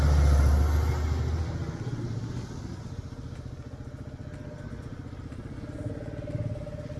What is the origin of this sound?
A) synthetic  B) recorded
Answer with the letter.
B